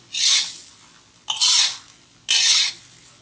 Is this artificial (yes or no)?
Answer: no